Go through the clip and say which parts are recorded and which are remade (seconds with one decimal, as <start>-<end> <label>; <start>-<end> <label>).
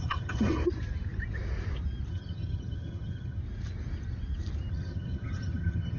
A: 0.0-0.6 remade; 0.6-2.1 recorded; 2.1-3.4 remade; 3.4-4.7 recorded; 4.7-6.0 remade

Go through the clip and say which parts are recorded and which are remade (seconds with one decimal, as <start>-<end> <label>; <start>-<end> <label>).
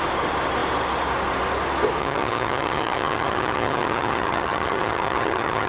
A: 0.0-2.0 recorded; 2.0-5.7 remade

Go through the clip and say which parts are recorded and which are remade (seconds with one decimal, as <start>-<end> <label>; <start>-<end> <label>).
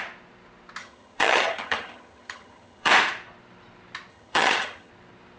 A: 0.0-0.8 recorded; 0.8-2.9 remade; 2.9-4.1 recorded; 4.1-4.9 remade; 4.9-5.4 recorded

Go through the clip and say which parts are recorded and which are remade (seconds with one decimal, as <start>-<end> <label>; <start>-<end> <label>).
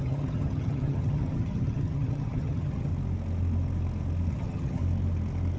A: 0.0-2.9 remade; 2.9-4.3 recorded; 4.3-4.8 remade; 4.8-5.6 recorded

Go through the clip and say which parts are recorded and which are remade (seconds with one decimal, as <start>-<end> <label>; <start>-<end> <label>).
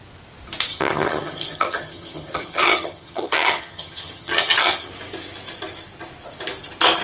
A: 0.0-0.7 recorded; 0.7-4.9 remade; 4.9-7.0 recorded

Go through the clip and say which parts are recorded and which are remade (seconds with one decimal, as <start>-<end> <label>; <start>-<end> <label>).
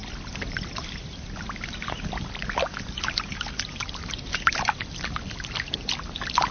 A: 0.0-6.5 recorded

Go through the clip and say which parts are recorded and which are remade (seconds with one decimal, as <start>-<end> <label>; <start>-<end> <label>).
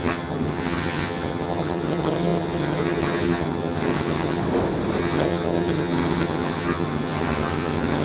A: 0.0-4.4 remade; 4.4-5.0 recorded; 5.0-8.0 remade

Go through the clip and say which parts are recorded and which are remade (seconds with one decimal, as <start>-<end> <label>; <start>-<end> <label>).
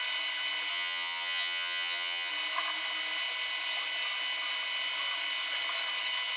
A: 0.0-0.7 recorded; 0.7-2.3 remade; 2.3-6.4 recorded